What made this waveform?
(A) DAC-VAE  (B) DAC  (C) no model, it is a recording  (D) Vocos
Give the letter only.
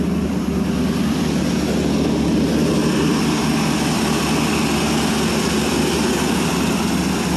C